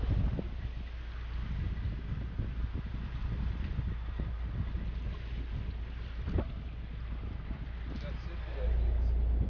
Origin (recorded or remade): recorded